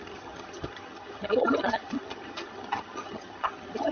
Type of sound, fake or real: fake